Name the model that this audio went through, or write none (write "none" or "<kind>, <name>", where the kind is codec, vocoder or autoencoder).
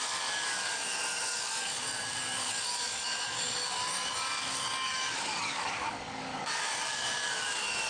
codec, DAC